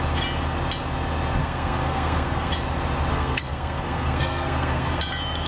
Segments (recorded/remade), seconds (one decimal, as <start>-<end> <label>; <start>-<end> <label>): 0.0-1.4 recorded; 1.4-2.5 remade; 2.5-3.1 recorded; 3.1-5.0 remade; 5.0-5.5 recorded